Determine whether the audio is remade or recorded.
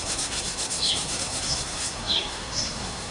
remade